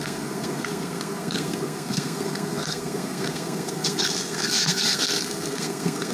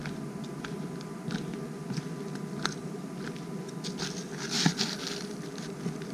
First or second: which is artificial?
first